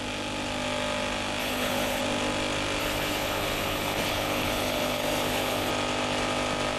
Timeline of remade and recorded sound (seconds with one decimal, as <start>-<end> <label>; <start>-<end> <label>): 0.0-1.4 recorded; 1.4-2.0 remade; 2.0-2.8 recorded; 2.8-5.7 remade; 5.7-6.8 recorded